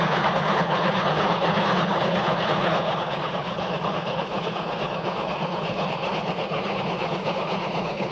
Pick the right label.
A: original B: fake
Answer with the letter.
B